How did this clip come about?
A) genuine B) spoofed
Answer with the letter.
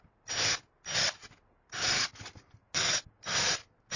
A